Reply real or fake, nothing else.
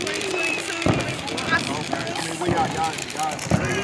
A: real